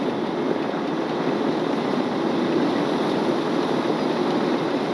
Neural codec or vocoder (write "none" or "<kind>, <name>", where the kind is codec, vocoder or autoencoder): none